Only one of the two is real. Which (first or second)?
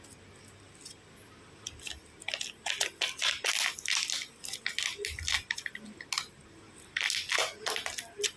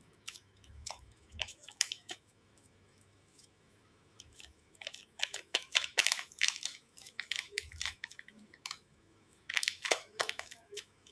first